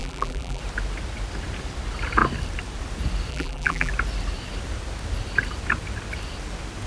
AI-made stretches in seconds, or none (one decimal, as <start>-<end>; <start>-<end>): 0.0-0.6; 3.3-3.9